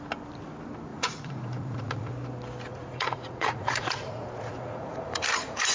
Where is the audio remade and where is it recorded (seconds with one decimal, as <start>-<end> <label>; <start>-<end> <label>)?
0.0-0.9 recorded; 0.9-2.1 remade; 2.1-2.7 recorded; 2.7-5.7 remade